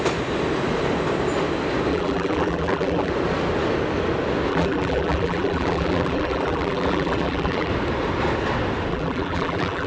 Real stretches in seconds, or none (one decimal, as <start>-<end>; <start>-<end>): 0.0-1.9; 3.1-4.5; 7.7-8.9